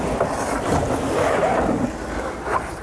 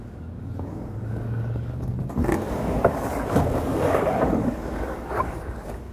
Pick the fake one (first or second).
second